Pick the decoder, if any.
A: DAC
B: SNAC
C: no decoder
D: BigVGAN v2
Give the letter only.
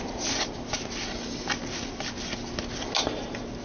C